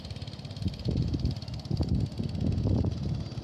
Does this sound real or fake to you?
real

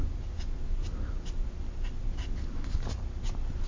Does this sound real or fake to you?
real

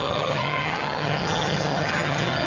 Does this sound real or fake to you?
fake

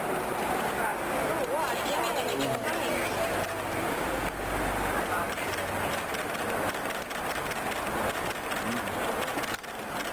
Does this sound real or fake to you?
fake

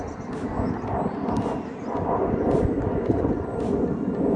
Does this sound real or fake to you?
real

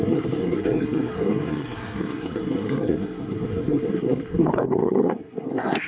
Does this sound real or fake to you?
fake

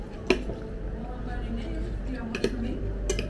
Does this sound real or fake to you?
real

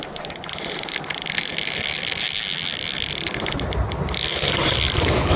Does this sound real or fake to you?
real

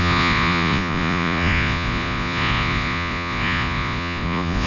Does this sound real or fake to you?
fake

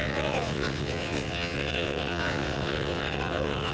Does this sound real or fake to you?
fake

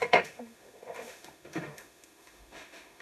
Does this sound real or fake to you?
fake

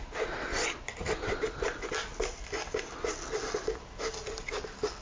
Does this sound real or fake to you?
real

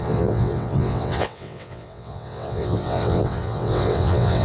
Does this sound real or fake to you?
fake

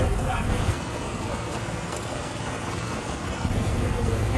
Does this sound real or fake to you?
fake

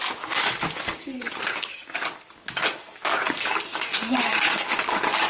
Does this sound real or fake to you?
fake